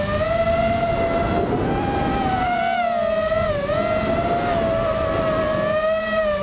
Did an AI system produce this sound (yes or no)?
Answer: no